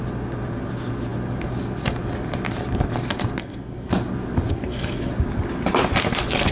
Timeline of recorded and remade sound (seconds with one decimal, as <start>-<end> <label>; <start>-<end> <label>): 0.0-3.4 recorded; 3.4-3.9 remade; 3.9-4.5 recorded; 4.5-5.1 remade; 5.1-6.5 recorded